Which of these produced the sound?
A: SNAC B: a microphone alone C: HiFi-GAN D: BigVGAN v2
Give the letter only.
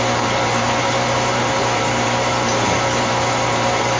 D